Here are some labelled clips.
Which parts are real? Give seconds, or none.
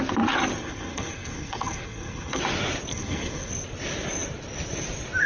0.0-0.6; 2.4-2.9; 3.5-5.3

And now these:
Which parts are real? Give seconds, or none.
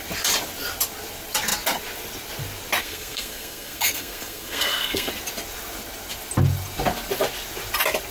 0.0-2.8; 5.1-8.1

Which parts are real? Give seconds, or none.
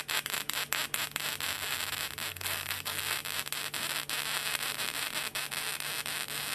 0.0-2.3; 3.0-6.5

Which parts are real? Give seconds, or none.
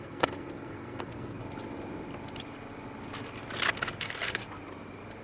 1.4-4.0; 4.4-5.2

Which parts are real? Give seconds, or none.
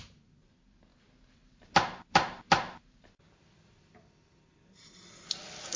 0.0-5.8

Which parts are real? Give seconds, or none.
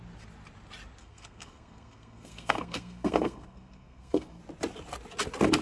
0.0-1.0; 4.4-5.6